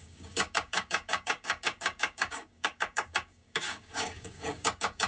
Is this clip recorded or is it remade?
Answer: remade